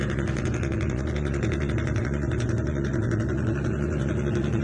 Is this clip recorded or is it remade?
remade